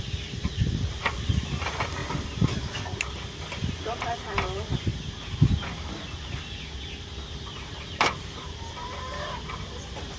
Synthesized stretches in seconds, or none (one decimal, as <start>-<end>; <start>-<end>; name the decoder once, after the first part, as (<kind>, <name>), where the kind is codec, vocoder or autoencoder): 0.0-2.0 (vocoder, BigVGAN v2); 3.5-4.9; 7.3-10.2